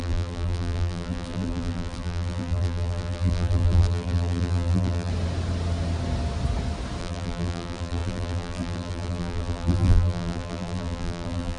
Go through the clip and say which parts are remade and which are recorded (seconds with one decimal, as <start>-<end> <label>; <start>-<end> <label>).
0.0-5.1 remade; 5.1-7.0 recorded; 7.0-11.6 remade